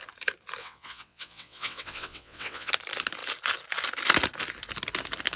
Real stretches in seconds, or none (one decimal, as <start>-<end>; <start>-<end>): 0.0-0.6; 2.7-5.4